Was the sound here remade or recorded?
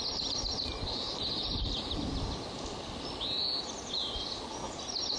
recorded